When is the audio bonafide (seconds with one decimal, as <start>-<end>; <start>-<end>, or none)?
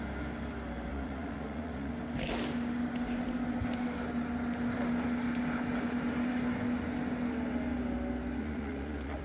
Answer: 0.0-0.9; 1.9-8.4